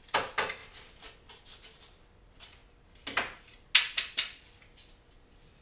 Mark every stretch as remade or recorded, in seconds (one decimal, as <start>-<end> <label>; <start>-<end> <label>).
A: 0.0-5.6 recorded